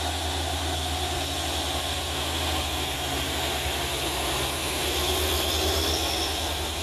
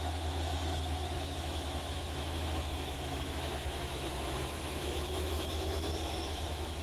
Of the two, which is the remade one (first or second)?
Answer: second